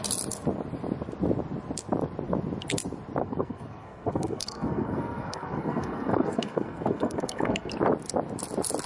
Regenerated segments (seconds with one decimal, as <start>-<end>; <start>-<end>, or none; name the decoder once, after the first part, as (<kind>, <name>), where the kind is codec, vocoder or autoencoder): 3.2-7.7 (codec, SNAC)